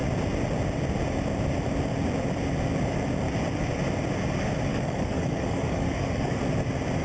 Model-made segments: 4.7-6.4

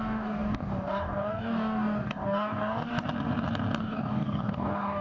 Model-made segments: 0.0-2.9; 3.8-5.0

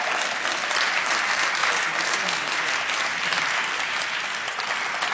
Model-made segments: none

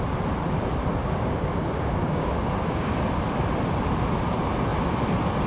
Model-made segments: 1.0-2.9

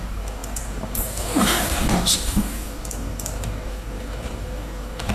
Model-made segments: 0.0-5.1